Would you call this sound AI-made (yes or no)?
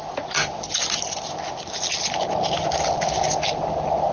no